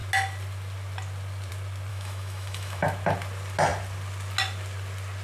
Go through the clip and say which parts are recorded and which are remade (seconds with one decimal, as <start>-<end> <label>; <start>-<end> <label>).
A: 0.0-1.9 recorded; 1.9-2.8 remade; 2.8-5.2 recorded